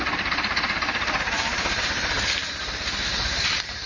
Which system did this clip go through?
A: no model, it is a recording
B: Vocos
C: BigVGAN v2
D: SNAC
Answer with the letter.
C